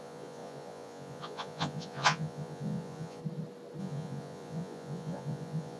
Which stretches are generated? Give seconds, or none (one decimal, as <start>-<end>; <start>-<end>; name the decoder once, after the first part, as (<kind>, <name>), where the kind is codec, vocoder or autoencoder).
0.0-3.2 (vocoder, Vocos); 3.8-5.8